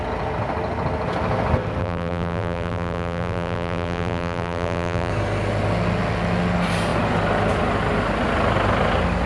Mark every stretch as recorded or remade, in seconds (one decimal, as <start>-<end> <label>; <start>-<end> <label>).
0.0-1.8 recorded; 1.8-5.1 remade; 5.1-9.3 recorded